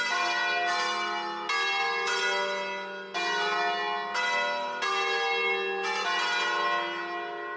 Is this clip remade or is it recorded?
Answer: recorded